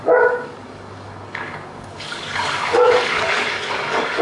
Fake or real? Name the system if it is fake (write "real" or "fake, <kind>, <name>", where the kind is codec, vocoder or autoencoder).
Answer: fake, codec, DAC